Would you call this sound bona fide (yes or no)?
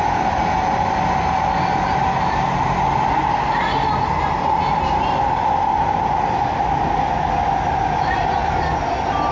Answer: yes